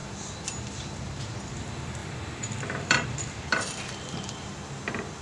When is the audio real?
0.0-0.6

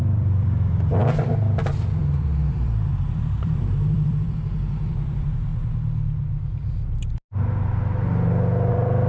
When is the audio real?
1.0-1.9; 5.5-8.7

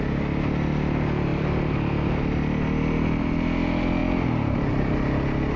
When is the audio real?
0.0-1.3; 1.9-5.6